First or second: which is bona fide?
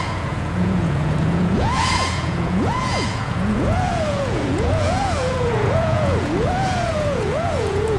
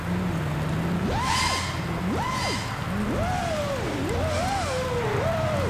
second